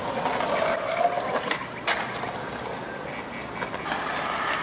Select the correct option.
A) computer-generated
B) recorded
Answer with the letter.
B